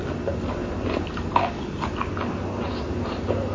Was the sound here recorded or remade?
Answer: recorded